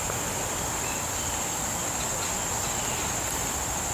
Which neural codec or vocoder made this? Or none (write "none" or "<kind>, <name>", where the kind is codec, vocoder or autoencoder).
none